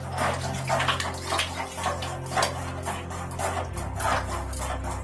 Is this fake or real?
real